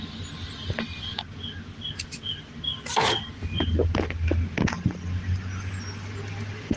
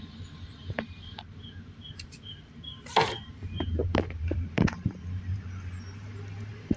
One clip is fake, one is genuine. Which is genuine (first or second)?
first